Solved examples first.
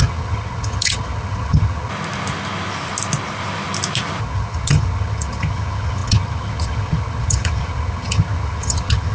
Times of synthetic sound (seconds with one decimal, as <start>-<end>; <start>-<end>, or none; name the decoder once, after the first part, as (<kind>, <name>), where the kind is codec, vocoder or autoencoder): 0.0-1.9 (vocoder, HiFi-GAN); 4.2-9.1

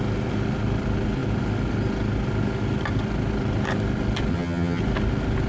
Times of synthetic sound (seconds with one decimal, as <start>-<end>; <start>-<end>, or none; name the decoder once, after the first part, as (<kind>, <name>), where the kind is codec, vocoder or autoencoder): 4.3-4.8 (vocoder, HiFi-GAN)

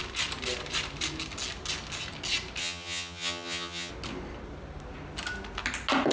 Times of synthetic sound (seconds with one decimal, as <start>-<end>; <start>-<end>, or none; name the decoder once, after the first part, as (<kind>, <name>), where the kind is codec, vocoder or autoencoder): 2.6-3.9 (vocoder, HiFi-GAN)

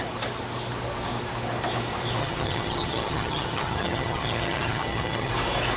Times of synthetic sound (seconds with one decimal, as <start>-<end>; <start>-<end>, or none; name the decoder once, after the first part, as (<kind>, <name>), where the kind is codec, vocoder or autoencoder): 2.2-5.3 (vocoder, HiFi-GAN)

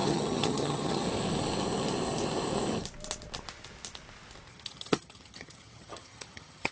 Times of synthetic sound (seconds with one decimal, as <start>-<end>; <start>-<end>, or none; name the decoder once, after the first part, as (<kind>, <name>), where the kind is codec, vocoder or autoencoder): 0.0-1.0 (vocoder, HiFi-GAN); 4.5-6.7

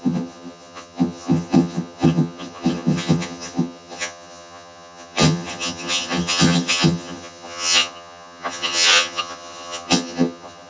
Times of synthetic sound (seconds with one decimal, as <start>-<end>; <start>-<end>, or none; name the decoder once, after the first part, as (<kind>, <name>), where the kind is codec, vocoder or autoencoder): 0.0-10.7 (vocoder, HiFi-GAN)

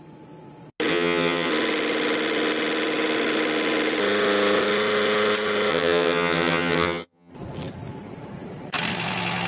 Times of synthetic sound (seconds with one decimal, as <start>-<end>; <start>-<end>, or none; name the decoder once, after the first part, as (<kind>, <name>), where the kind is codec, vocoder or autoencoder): 0.9-1.5 (vocoder, HiFi-GAN); 5.7-7.3

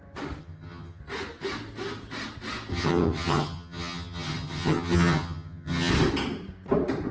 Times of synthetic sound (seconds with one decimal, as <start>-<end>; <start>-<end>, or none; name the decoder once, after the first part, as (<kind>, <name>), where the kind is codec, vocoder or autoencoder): 0.4-1.0 (vocoder, HiFi-GAN); 2.7-5.9